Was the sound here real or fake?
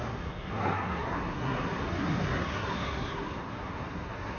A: fake